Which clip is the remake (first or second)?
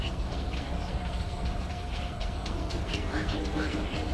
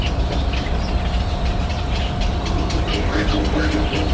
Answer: first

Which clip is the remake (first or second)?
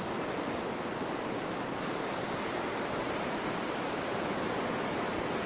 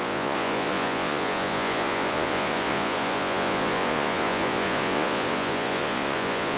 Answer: second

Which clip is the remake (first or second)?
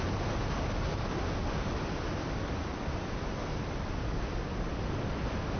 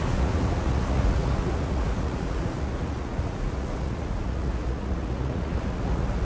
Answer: second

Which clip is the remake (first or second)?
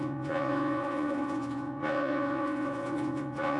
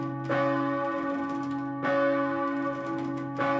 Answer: first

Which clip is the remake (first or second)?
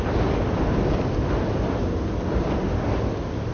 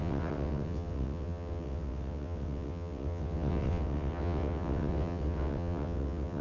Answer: second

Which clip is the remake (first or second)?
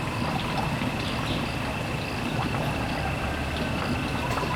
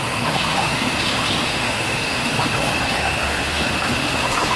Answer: second